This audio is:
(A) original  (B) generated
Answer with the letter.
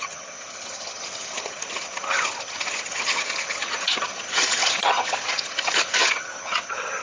B